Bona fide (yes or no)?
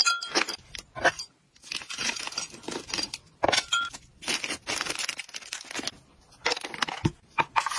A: yes